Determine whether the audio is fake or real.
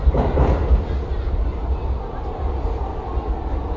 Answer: real